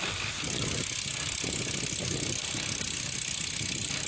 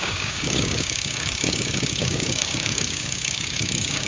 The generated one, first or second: second